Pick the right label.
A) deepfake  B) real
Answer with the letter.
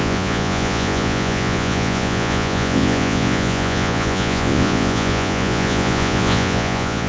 A